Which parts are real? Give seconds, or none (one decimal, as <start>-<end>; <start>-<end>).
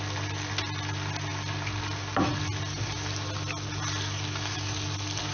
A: 0.0-5.3